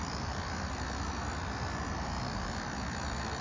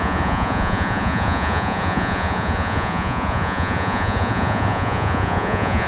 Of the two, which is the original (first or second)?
first